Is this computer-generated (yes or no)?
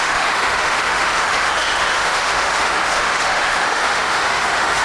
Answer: yes